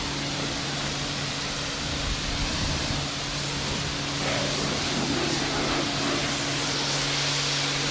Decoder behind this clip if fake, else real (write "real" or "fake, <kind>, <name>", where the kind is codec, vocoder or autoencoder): real